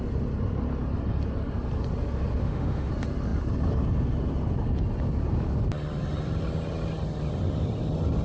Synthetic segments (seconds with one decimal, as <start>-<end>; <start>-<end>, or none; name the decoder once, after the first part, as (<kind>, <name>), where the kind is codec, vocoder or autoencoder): 2.4-2.9 (autoencoder, DAC-VAE)